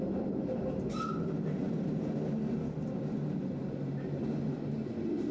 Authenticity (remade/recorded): recorded